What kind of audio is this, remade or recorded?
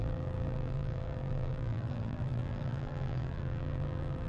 remade